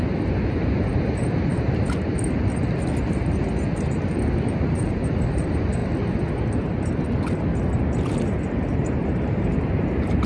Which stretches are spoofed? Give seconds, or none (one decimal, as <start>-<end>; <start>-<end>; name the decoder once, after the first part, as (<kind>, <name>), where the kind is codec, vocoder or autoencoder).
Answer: 0.0-1.5 (vocoder, BigVGAN v2); 3.0-5.8; 8.2-10.3